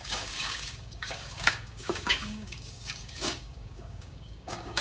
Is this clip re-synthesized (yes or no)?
yes